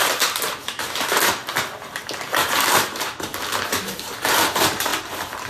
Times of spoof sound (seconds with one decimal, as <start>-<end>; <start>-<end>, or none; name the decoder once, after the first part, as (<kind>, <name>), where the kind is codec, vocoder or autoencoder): 0.0-1.4 (vocoder, BigVGAN v2); 2.2-3.3; 4.3-4.9